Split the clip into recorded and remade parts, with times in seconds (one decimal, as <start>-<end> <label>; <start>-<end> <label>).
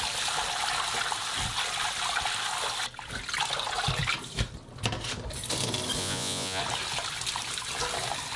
0.0-6.0 recorded; 6.0-6.6 remade; 6.6-8.4 recorded